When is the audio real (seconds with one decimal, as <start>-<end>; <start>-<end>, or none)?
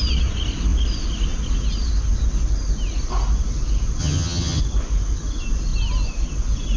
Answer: 0.0-4.0; 4.6-6.8